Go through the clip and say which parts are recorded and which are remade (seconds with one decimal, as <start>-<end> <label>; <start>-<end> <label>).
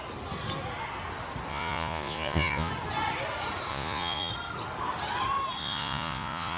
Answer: 0.0-1.5 recorded; 1.5-2.7 remade; 2.7-3.7 recorded; 3.7-4.3 remade; 4.3-5.6 recorded; 5.6-6.6 remade